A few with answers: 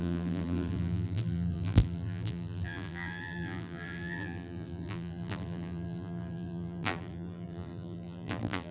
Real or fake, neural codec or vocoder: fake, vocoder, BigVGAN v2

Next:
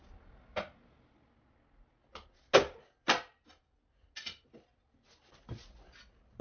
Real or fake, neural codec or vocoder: real